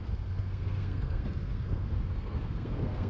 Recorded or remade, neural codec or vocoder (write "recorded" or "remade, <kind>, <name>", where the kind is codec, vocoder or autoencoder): remade, codec, SNAC